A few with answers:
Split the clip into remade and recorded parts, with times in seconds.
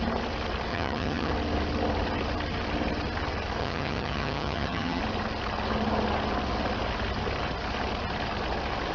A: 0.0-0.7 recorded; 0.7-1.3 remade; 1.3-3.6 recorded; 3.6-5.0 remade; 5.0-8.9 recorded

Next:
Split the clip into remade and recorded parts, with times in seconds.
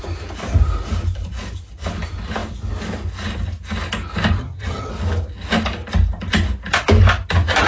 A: 0.0-4.4 recorded; 4.4-4.9 remade; 4.9-7.7 recorded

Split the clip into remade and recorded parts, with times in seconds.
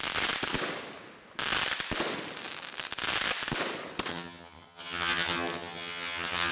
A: 0.0-4.1 recorded; 4.1-6.5 remade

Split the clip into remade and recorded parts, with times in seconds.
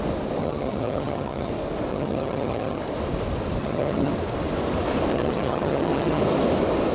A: 0.0-0.4 recorded; 0.4-1.5 remade; 1.5-1.9 recorded; 1.9-2.8 remade; 2.8-3.6 recorded; 3.6-4.1 remade; 4.1-5.1 recorded; 5.1-6.2 remade; 6.2-6.9 recorded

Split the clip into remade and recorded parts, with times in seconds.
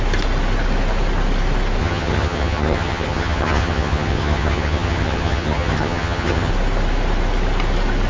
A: 0.0-1.8 recorded; 1.8-6.5 remade; 6.5-8.1 recorded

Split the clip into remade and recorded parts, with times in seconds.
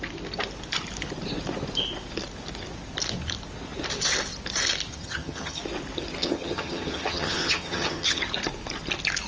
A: 0.0-4.9 recorded; 4.9-5.6 remade; 5.6-6.2 recorded; 6.2-8.2 remade; 8.2-9.3 recorded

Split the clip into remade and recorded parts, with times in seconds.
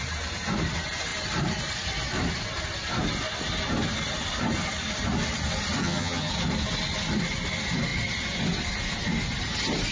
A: 0.0-5.8 recorded; 5.8-6.3 remade; 6.3-9.9 recorded